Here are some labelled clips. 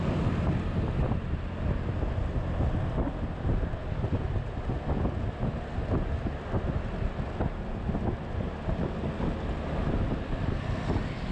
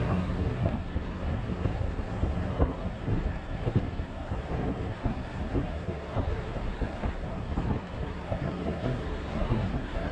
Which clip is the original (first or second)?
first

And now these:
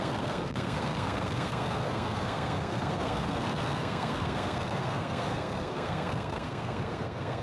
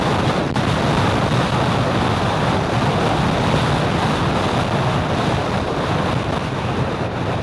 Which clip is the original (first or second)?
second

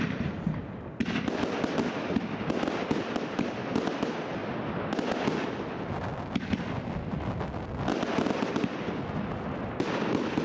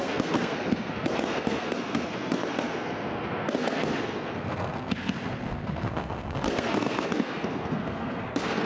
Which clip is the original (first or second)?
first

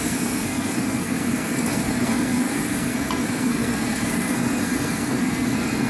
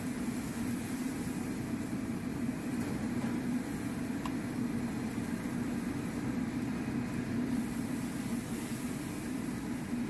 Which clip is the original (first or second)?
second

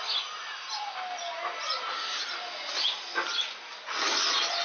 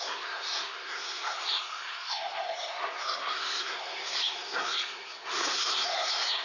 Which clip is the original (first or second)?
first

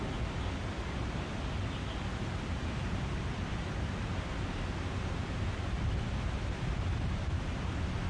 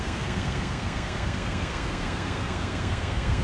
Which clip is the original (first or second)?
first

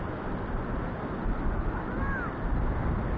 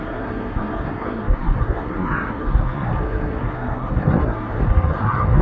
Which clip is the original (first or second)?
first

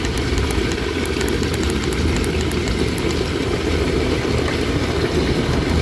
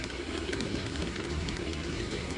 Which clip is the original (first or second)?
first